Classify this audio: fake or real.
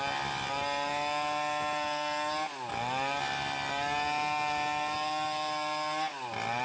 real